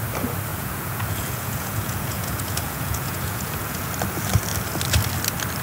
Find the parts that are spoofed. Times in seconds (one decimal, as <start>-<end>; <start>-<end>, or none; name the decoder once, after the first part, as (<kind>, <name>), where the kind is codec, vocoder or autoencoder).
0.5-3.9 (vocoder, Vocos)